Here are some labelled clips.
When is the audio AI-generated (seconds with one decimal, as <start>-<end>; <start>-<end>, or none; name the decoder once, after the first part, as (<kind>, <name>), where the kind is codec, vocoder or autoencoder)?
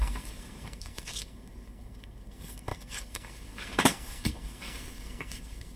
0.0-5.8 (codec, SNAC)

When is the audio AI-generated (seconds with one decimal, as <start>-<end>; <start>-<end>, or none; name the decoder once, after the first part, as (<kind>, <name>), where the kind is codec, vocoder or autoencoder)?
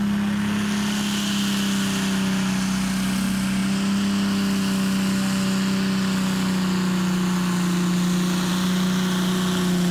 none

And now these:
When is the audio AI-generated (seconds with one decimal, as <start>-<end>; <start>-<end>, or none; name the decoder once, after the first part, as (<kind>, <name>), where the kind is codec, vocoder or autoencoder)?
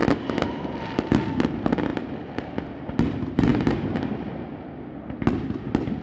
none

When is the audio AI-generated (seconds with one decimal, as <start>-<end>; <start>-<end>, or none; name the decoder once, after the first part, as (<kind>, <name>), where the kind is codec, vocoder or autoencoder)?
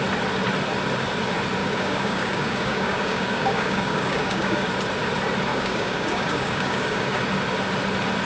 1.6-4.7 (codec, DAC); 5.5-7.2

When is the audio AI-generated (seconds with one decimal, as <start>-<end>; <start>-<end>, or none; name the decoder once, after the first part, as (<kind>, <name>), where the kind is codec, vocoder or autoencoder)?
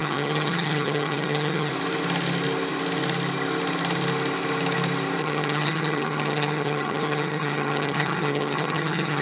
0.0-1.7 (vocoder, HiFi-GAN); 5.2-9.2